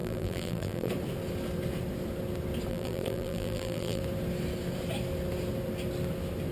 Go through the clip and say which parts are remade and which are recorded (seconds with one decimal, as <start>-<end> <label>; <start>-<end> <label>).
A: 0.0-0.9 remade; 0.9-2.7 recorded; 2.7-4.0 remade; 4.0-6.5 recorded